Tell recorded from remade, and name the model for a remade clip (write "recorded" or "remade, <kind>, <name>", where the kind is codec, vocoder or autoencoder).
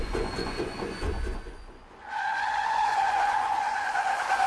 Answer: remade, vocoder, Vocos